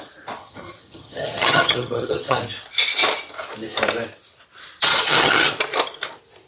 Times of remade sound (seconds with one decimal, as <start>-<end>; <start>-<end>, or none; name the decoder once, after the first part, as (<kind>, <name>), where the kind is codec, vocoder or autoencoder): 0.4-2.4 (vocoder, HiFi-GAN); 4.9-5.5